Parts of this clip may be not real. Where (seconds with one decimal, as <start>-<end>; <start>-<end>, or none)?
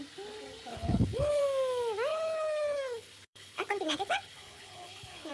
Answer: 0.7-1.4; 2.1-5.3